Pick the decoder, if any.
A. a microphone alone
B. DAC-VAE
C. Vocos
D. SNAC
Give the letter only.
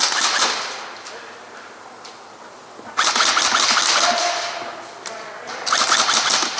A